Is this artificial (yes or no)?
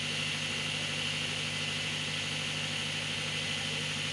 no